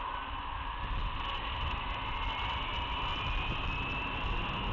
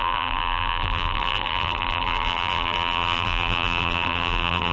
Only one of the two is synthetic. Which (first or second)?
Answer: second